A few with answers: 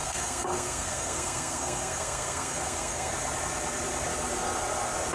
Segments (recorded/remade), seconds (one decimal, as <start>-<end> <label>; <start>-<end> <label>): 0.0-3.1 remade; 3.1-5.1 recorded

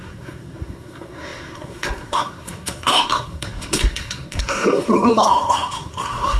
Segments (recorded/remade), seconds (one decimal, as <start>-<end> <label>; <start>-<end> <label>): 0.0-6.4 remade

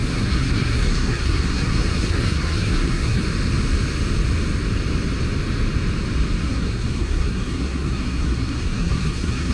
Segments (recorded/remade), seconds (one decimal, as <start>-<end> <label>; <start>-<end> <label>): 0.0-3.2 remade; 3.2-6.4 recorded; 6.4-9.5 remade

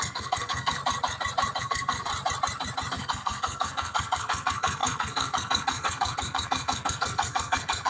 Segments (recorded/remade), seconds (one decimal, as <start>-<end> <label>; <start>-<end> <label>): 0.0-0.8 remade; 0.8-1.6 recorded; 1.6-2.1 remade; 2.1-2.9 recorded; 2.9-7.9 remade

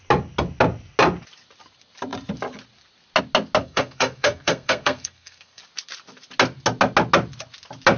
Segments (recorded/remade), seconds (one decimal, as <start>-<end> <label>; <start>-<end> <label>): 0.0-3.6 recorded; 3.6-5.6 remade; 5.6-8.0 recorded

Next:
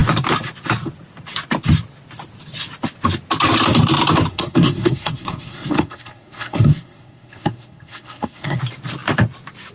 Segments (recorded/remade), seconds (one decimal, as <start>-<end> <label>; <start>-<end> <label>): 0.0-4.3 recorded; 4.3-8.6 remade; 8.6-9.7 recorded

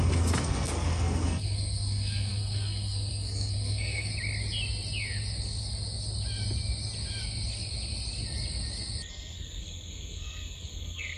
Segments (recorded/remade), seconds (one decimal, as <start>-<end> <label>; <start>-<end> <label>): 0.0-4.1 remade; 4.1-9.1 recorded; 9.1-11.2 remade

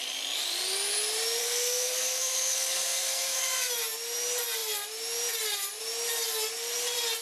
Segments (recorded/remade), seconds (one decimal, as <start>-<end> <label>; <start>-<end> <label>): 0.0-1.4 recorded; 1.4-3.7 remade; 3.7-7.2 recorded